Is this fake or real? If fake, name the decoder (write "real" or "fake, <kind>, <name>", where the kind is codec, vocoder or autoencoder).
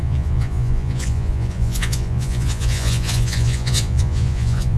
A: fake, vocoder, Vocos